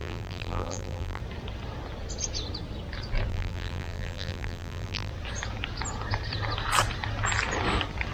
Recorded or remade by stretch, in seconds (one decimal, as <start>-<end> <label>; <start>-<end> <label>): 0.0-1.2 remade; 1.2-3.3 recorded; 3.3-5.1 remade; 5.1-8.1 recorded